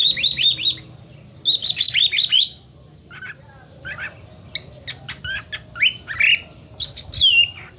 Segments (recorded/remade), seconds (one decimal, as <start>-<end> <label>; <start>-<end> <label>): 0.0-7.8 recorded